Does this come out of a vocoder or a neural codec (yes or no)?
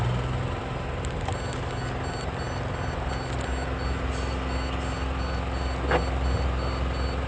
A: no